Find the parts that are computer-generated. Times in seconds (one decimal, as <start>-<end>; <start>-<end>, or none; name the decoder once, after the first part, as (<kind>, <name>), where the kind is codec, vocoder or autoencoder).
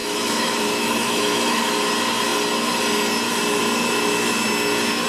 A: 0.0-1.6 (autoencoder, DAC-VAE)